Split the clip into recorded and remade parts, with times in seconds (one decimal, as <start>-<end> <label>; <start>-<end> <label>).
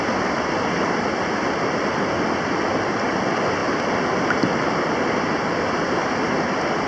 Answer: 0.0-6.9 recorded